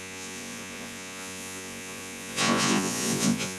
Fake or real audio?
fake